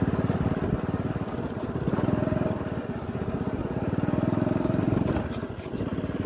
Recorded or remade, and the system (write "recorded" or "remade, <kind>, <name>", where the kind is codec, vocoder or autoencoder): recorded